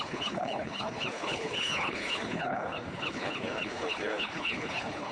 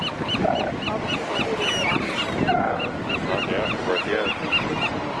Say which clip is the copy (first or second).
first